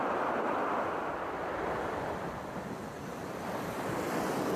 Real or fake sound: real